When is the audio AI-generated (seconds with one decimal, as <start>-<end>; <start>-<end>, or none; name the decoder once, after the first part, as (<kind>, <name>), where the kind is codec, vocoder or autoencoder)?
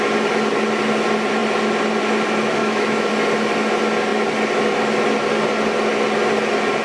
2.6-3.1 (autoencoder, DAC-VAE)